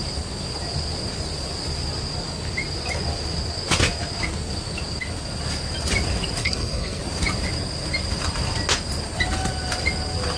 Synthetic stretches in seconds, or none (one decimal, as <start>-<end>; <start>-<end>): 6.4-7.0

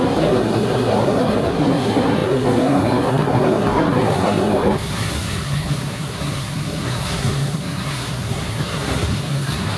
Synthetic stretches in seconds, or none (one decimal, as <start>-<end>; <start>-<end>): 0.0-9.8

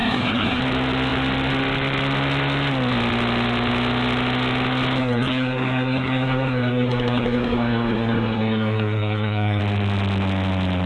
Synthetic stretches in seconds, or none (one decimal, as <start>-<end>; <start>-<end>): 0.0-0.6; 5.0-9.6

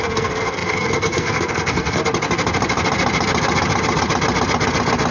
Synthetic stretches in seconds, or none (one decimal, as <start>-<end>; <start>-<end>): 0.0-2.0

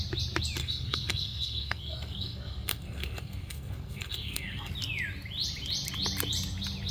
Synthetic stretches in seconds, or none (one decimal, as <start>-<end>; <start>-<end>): 0.6-4.7